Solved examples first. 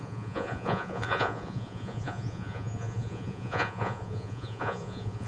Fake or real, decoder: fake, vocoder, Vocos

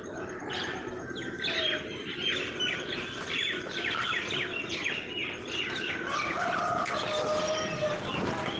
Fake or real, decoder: real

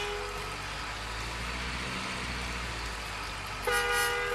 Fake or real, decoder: real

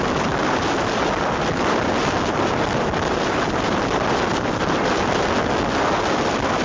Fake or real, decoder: real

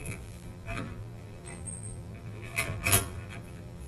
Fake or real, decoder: fake, vocoder, BigVGAN v2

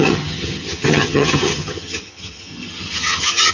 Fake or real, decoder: fake, vocoder, HiFi-GAN